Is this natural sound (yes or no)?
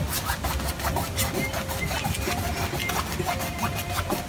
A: yes